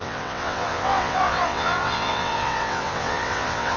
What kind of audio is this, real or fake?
fake